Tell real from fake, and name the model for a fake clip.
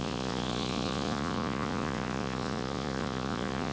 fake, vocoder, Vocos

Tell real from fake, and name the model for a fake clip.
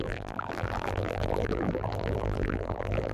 fake, vocoder, BigVGAN v2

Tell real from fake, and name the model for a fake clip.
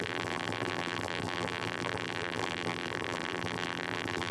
fake, vocoder, BigVGAN v2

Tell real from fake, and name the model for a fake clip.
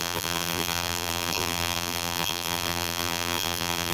fake, vocoder, BigVGAN v2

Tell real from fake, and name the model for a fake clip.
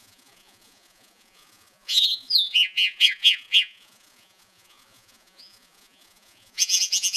fake, vocoder, Vocos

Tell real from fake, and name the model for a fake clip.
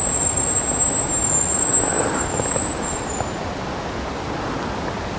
real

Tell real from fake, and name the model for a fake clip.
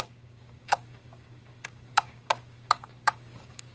fake, codec, DAC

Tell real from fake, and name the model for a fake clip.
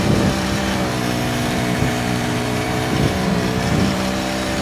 fake, vocoder, BigVGAN v2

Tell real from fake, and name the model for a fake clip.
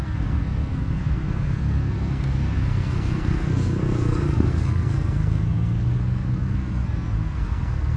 fake, codec, SNAC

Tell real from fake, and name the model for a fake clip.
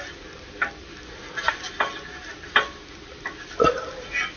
real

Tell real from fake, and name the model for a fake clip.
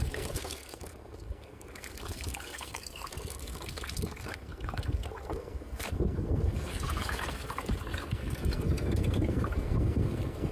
fake, codec, SNAC